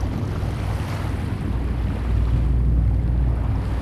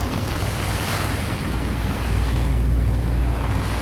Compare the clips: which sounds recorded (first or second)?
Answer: first